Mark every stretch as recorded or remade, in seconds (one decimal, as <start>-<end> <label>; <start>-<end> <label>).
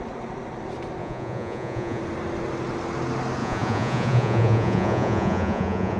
0.0-1.0 recorded; 1.0-2.0 remade; 2.0-3.4 recorded; 3.4-6.0 remade